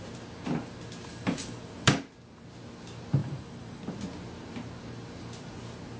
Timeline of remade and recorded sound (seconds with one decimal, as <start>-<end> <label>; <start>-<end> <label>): 0.0-1.1 recorded; 1.1-2.0 remade; 2.0-3.2 recorded; 3.2-3.9 remade; 3.9-6.0 recorded

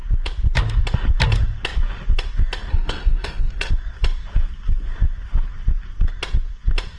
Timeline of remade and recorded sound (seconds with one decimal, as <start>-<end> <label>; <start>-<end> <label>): 0.0-2.7 recorded; 2.7-3.7 remade; 3.7-7.0 recorded